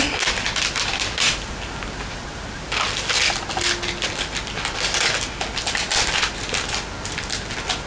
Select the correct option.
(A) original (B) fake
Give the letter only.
A